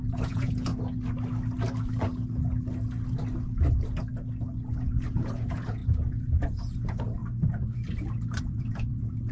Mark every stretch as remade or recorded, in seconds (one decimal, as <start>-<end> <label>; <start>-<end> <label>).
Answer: 0.0-0.7 remade; 0.7-4.8 recorded; 4.8-7.2 remade; 7.2-8.4 recorded; 8.4-9.3 remade

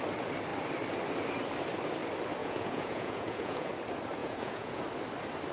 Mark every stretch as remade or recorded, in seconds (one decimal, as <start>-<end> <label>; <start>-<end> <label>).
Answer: 0.0-2.4 recorded; 2.4-3.7 remade; 3.7-4.2 recorded; 4.2-4.8 remade; 4.8-5.5 recorded

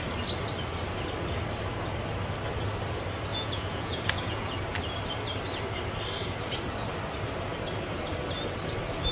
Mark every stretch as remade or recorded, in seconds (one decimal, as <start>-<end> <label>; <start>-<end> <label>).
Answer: 0.0-3.3 recorded; 3.3-4.6 remade; 4.6-9.1 recorded

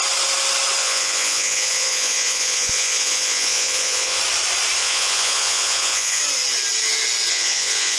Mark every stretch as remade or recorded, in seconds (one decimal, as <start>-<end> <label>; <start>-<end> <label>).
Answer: 0.0-0.8 recorded; 0.8-4.2 remade; 4.2-4.8 recorded; 4.8-6.2 remade; 6.2-7.3 recorded; 7.3-8.0 remade

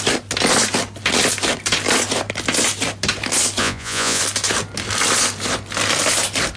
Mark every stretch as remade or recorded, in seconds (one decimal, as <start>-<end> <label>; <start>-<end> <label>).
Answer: 0.0-3.6 recorded; 3.6-4.2 remade; 4.2-6.6 recorded

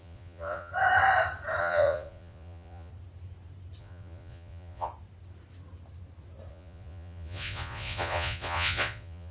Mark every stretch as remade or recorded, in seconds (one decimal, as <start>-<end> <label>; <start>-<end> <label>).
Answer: 0.0-0.7 remade; 0.7-1.6 recorded; 1.6-2.9 remade; 2.9-3.8 recorded; 3.8-4.9 remade; 4.9-6.5 recorded; 6.5-9.3 remade

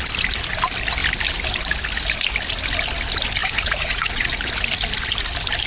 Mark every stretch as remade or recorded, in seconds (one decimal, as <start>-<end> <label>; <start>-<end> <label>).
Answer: 0.0-3.4 recorded; 3.4-4.3 remade; 4.3-5.7 recorded

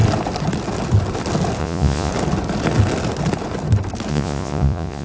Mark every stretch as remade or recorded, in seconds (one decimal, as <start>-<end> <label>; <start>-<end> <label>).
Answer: 0.0-1.6 recorded; 1.6-2.1 remade; 2.1-4.1 recorded; 4.1-5.0 remade